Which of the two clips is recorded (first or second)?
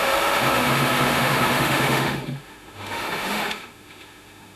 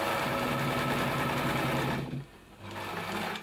second